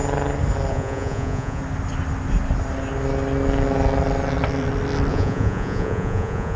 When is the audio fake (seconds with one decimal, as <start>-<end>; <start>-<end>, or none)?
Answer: 0.7-1.6; 5.1-6.6